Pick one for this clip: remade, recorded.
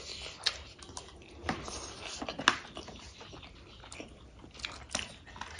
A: recorded